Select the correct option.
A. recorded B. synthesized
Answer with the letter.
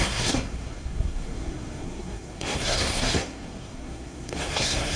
B